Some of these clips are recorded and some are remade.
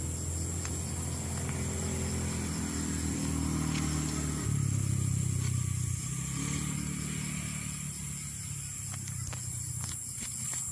recorded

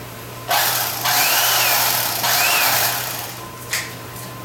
remade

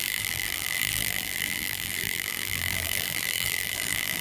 remade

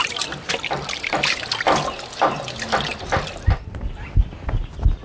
recorded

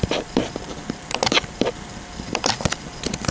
remade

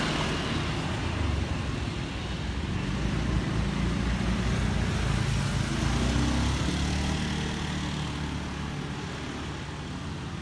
recorded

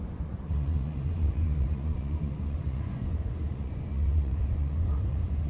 remade